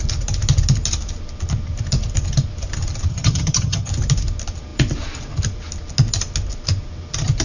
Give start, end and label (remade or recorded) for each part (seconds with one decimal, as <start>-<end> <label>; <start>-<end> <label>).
0.0-3.1 recorded; 3.1-3.9 remade; 3.9-7.4 recorded